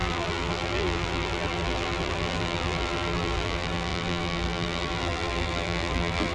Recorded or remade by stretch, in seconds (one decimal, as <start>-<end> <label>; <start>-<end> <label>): 0.0-6.3 remade